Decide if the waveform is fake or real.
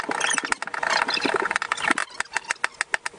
real